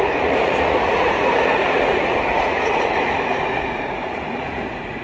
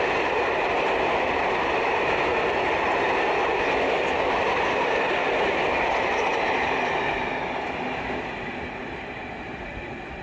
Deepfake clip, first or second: first